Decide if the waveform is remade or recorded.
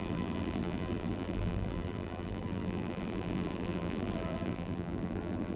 remade